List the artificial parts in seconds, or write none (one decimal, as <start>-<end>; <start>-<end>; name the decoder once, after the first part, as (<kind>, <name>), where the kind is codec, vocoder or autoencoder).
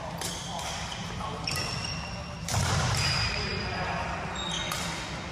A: none